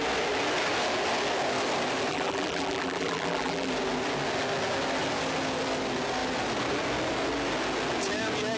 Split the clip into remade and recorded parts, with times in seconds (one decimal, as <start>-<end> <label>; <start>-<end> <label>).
0.0-2.1 recorded; 2.1-3.7 remade; 3.7-8.6 recorded

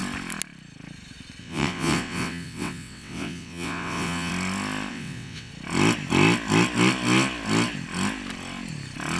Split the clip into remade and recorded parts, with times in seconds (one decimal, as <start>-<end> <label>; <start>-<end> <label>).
0.0-1.4 recorded; 1.4-4.3 remade; 4.3-4.9 recorded; 4.9-5.5 remade; 5.5-9.2 recorded

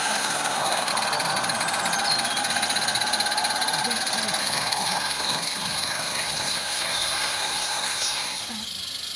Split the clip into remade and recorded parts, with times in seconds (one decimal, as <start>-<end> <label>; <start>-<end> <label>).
0.0-0.9 remade; 0.9-4.4 recorded; 4.4-8.4 remade; 8.4-9.2 recorded

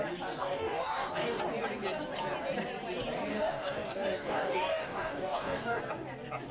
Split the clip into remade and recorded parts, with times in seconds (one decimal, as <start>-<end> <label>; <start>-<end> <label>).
0.0-0.4 recorded; 0.4-1.4 remade; 1.4-3.3 recorded; 3.3-5.8 remade; 5.8-6.5 recorded

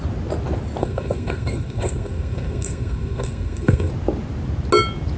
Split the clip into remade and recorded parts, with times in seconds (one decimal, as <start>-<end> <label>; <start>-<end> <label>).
0.0-0.8 recorded; 0.8-3.9 remade; 3.9-5.2 recorded

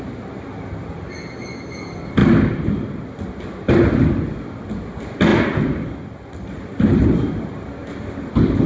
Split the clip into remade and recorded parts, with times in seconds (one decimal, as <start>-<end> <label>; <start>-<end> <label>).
0.0-8.7 recorded